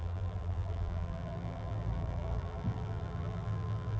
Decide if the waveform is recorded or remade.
remade